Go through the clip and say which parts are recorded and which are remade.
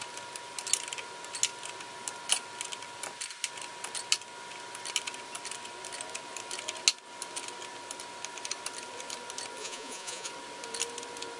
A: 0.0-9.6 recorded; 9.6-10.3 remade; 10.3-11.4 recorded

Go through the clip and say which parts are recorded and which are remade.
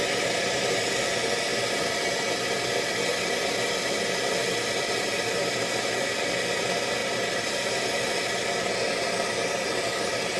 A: 0.0-10.4 recorded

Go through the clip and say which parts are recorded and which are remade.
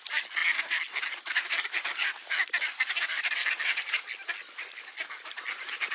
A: 0.0-5.9 recorded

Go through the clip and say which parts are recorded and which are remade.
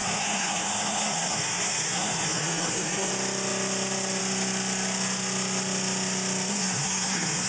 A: 0.0-3.1 remade; 3.1-6.5 recorded; 6.5-7.5 remade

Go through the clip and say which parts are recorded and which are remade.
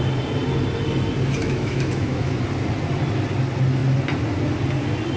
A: 0.0-1.4 recorded; 1.4-2.4 remade; 2.4-5.2 recorded